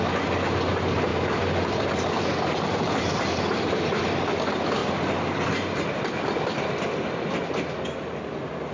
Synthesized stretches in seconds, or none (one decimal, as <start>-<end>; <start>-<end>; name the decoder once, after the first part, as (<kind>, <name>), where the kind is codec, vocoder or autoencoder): 1.1-3.7 (vocoder, BigVGAN v2); 4.8-8.2